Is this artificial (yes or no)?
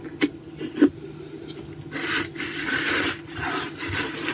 no